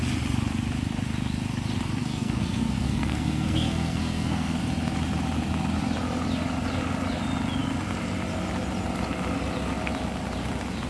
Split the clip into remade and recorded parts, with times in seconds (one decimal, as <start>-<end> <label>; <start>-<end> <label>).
0.0-2.0 recorded; 2.0-4.6 remade; 4.6-10.9 recorded